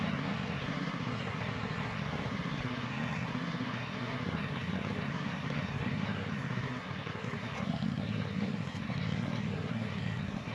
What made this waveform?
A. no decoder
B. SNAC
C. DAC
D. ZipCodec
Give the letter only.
B